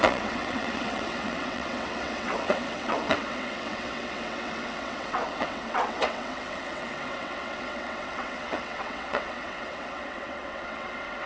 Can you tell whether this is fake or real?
fake